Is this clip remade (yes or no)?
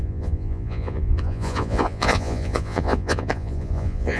yes